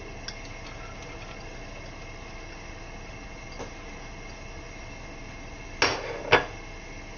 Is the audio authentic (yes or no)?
yes